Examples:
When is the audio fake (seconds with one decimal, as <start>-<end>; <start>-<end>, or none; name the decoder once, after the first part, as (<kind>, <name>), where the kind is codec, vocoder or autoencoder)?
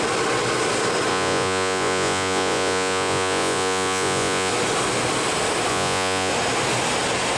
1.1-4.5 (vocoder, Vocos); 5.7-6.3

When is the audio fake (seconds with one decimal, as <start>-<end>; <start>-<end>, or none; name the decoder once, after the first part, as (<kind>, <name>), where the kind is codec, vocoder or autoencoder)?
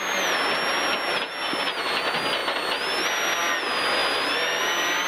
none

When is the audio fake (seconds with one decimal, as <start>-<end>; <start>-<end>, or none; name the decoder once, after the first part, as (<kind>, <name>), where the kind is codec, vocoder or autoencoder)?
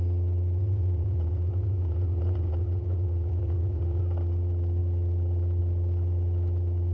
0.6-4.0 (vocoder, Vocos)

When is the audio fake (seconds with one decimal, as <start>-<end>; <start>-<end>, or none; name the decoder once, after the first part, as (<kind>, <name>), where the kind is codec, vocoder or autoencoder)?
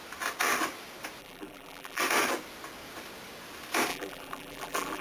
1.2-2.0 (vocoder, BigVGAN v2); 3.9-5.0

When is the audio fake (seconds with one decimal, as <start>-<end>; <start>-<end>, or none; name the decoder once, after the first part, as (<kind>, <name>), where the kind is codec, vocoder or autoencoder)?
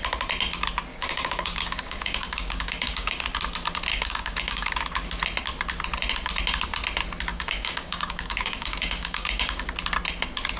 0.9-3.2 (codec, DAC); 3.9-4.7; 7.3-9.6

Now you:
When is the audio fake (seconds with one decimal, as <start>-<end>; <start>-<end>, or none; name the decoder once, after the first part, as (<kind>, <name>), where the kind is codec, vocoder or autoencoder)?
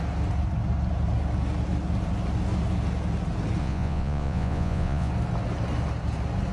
3.6-5.1 (vocoder, Vocos)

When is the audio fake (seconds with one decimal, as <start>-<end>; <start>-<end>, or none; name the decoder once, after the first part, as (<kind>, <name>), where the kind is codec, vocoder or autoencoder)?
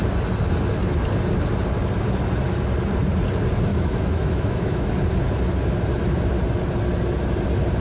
3.7-4.9 (autoencoder, DAC-VAE)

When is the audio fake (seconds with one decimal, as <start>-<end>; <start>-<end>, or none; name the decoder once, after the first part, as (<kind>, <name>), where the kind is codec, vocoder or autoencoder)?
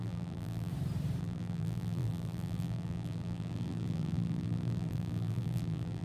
0.0-0.7 (vocoder, BigVGAN v2); 1.2-6.0